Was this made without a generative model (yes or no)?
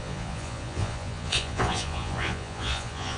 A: no